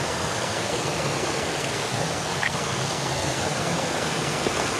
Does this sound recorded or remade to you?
remade